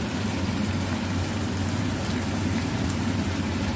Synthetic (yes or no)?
yes